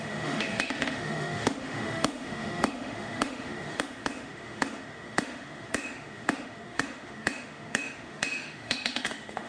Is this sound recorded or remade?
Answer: remade